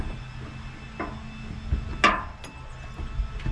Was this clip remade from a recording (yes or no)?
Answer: no